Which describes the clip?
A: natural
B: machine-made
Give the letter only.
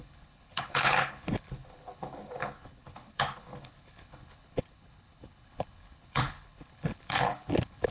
B